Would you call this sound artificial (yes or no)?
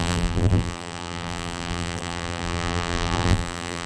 yes